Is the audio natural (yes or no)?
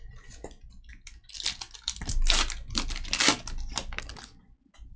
yes